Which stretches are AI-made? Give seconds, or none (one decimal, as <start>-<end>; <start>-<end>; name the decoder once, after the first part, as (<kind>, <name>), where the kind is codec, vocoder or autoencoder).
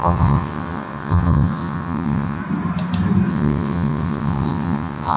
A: 0.0-2.4 (vocoder, WaveNeXt); 3.3-5.2